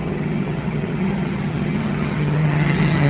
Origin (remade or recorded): remade